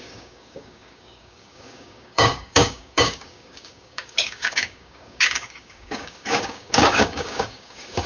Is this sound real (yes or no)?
no